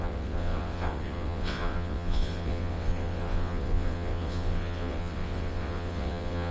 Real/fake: fake